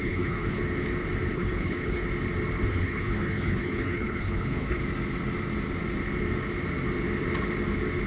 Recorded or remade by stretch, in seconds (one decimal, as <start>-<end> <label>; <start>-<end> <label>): 0.0-0.6 remade; 0.6-1.3 recorded; 1.3-2.0 remade; 2.0-2.7 recorded; 2.7-4.8 remade; 4.8-8.1 recorded